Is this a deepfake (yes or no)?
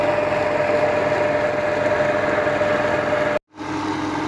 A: no